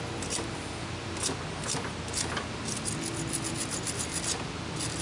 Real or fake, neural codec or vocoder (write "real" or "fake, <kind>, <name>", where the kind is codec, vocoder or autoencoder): real